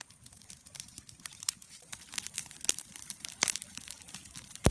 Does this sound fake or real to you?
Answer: fake